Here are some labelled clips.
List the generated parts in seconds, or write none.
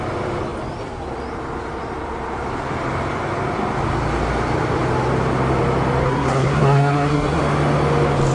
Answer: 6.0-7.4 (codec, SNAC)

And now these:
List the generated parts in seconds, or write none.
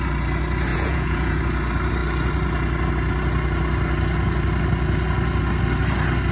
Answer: 0.7-1.4 (vocoder, Vocos)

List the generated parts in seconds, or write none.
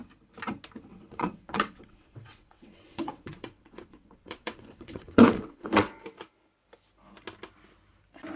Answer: 0.9-5.9 (vocoder, WaveNeXt)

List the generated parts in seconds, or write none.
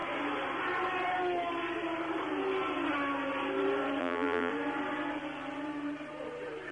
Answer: 4.0-4.5 (vocoder, BigVGAN v2)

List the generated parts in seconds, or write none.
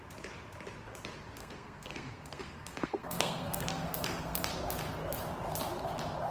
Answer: 1.4-4.5 (codec, SNAC)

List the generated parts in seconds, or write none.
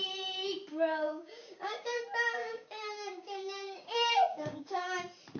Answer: 0.7-2.0 (codec, DAC); 2.4-5.0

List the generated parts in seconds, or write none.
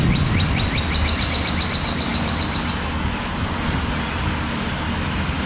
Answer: none